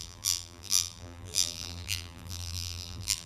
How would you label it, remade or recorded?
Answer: remade